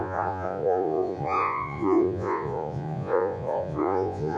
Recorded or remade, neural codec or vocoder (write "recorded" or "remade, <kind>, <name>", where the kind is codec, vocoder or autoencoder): remade, vocoder, Vocos